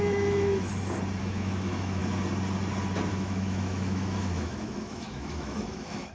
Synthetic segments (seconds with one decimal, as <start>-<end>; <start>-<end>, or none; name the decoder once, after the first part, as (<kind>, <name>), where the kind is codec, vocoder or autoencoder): 0.0-0.7 (autoencoder, DAC-VAE); 1.2-2.0; 3.1-6.1